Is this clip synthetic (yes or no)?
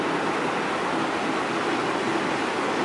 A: no